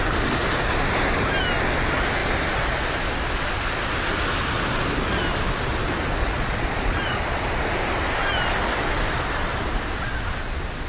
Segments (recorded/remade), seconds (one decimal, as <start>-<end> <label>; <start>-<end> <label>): 0.0-6.2 recorded; 6.2-7.5 remade; 7.5-10.9 recorded